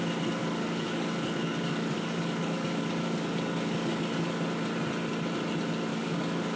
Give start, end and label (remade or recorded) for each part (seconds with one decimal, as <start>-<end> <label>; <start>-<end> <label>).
0.0-0.4 recorded; 0.4-4.0 remade; 4.0-5.9 recorded; 5.9-6.6 remade